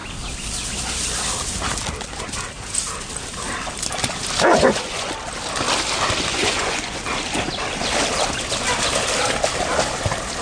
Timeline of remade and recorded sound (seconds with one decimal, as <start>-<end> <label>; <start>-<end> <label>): 0.0-4.5 recorded; 4.5-5.1 remade; 5.1-6.3 recorded; 6.3-7.0 remade; 7.0-10.4 recorded

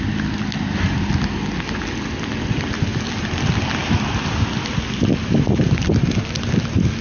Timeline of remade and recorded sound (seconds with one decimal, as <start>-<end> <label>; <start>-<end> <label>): 0.0-7.0 recorded

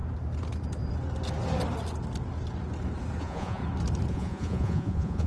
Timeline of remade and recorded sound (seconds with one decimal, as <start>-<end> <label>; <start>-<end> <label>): 0.0-3.2 recorded; 3.2-3.6 remade; 3.6-4.1 recorded; 4.1-5.3 remade

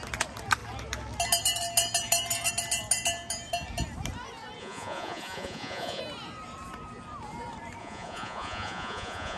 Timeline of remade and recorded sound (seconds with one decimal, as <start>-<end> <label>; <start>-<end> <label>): 0.0-4.6 recorded; 4.6-6.0 remade; 6.0-7.8 recorded; 7.8-9.4 remade

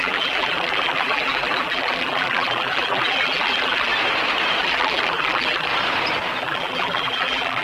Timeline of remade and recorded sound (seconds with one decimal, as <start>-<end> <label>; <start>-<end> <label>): 0.0-3.9 remade; 3.9-4.6 recorded; 4.6-5.7 remade; 5.7-6.4 recorded; 6.4-7.6 remade

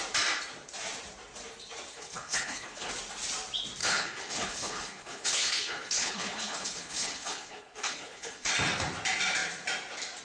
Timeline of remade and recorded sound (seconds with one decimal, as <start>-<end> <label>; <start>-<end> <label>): 0.0-1.9 recorded; 1.9-2.9 remade; 2.9-3.8 recorded; 3.8-8.5 remade; 8.5-10.2 recorded

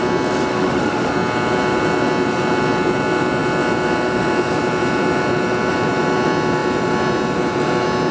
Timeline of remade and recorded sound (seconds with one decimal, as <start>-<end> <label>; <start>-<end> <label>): 0.0-0.5 recorded; 0.5-1.1 remade; 1.1-8.1 recorded

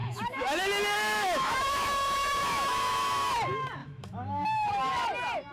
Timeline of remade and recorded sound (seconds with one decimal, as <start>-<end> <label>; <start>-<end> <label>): 0.0-3.3 remade; 3.3-3.8 recorded; 3.8-4.9 remade; 4.9-5.5 recorded